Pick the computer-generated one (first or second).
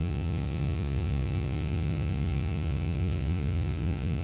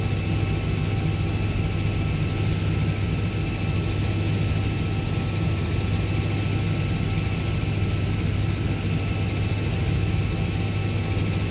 first